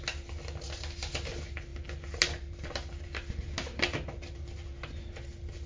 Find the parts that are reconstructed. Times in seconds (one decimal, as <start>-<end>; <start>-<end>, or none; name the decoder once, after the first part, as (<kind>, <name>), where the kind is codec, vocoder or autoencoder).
none

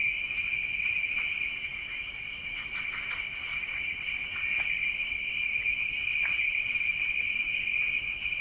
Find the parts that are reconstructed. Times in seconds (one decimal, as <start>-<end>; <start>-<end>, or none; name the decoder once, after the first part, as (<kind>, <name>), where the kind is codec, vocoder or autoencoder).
0.0-8.4 (vocoder, Vocos)

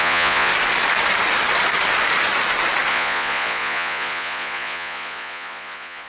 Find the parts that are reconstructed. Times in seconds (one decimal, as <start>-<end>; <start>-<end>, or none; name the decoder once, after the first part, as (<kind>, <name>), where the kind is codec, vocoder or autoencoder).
0.0-0.5 (vocoder, Vocos); 2.9-6.1

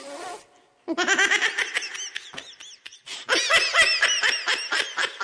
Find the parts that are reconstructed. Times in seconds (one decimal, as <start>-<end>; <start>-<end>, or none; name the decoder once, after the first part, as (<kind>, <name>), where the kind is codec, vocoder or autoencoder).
none

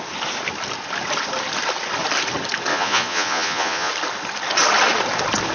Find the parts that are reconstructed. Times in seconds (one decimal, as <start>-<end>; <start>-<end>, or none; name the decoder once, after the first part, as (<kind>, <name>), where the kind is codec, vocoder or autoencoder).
2.7-3.9 (vocoder, Vocos)